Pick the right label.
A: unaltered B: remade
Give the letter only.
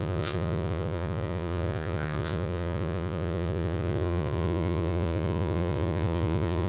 B